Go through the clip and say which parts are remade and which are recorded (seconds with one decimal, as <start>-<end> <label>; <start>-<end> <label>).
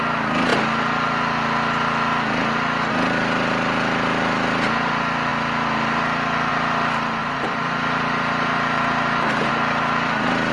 0.0-7.2 recorded; 7.2-9.5 remade; 9.5-10.5 recorded